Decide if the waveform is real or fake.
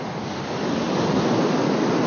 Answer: real